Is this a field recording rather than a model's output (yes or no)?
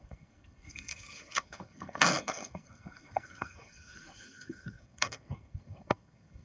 no